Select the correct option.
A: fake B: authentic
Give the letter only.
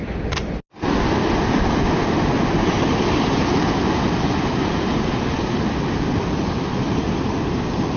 B